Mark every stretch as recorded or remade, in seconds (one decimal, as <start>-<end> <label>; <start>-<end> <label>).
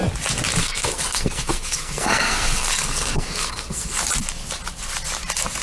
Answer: 0.0-0.6 recorded; 0.6-4.0 remade; 4.0-5.6 recorded